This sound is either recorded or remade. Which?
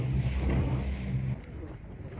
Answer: recorded